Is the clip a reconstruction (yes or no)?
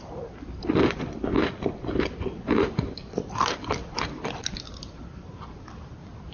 yes